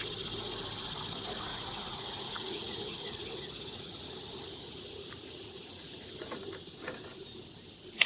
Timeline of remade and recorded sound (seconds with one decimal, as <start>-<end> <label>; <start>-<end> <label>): 0.0-1.5 recorded; 1.5-6.4 remade; 6.4-8.1 recorded